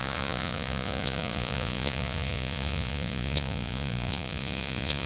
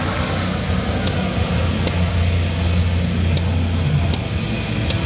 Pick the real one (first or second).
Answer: second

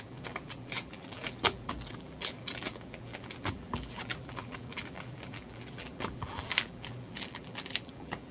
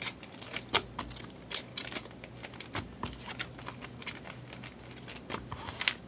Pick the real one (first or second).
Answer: second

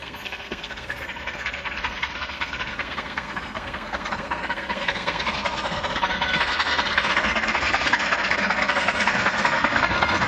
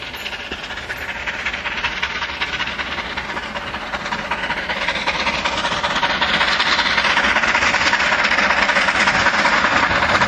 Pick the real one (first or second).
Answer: second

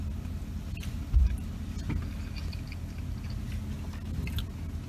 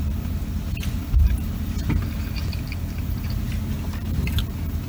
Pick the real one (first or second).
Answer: first